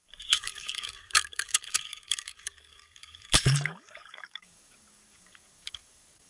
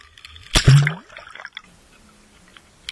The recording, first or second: second